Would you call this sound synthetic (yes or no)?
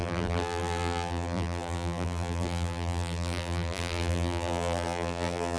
yes